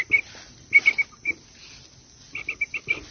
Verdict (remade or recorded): recorded